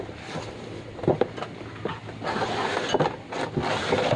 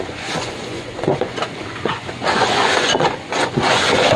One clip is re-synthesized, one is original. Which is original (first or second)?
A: first